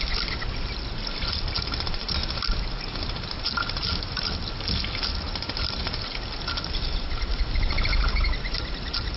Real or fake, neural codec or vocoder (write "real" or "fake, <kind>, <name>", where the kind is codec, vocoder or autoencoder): real